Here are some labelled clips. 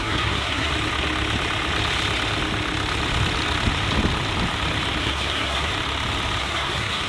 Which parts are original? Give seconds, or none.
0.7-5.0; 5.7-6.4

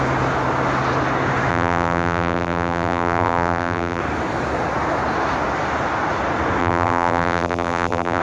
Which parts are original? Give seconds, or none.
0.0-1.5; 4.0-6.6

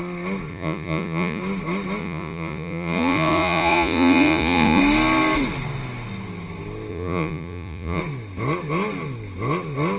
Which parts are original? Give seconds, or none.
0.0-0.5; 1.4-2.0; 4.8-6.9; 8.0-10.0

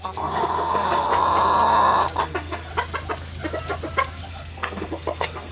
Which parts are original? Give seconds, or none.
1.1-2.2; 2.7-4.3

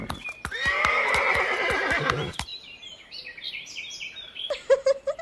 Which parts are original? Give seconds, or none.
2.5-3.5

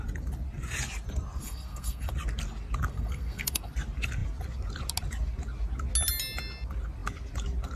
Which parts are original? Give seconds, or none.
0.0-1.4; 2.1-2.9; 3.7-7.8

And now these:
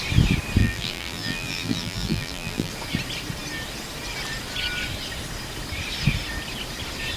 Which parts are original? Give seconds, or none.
0.0-0.6; 2.7-7.2

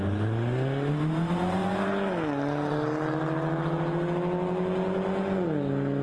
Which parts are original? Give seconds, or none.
0.0-6.0